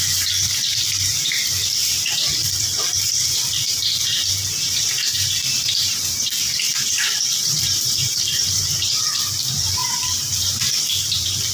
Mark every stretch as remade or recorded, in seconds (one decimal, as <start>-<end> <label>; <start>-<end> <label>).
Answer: 0.0-11.5 remade